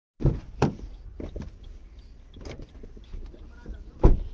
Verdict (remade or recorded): recorded